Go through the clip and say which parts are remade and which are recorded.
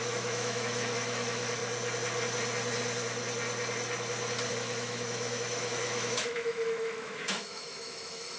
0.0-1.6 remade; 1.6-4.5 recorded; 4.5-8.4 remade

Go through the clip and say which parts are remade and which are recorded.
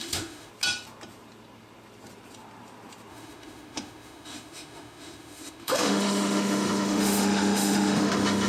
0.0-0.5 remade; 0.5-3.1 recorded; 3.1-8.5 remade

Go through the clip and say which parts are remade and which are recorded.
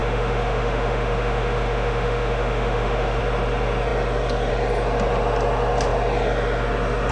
0.0-3.2 remade; 3.2-7.1 recorded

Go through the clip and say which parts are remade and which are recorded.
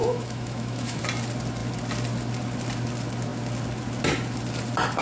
0.0-1.0 remade; 1.0-5.0 recorded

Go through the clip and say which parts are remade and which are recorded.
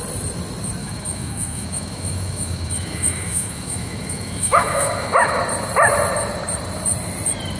0.0-0.8 recorded; 0.8-5.4 remade; 5.4-7.6 recorded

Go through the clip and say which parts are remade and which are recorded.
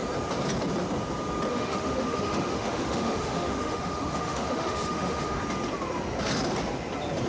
0.0-1.5 recorded; 1.5-5.4 remade; 5.4-7.3 recorded